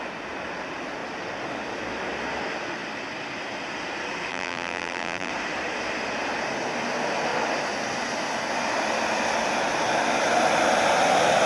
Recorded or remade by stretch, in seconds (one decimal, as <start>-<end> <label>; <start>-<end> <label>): 0.0-4.3 recorded; 4.3-5.3 remade; 5.3-11.5 recorded